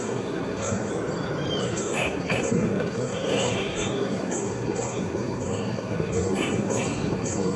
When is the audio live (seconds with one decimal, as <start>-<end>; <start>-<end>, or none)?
0.9-1.6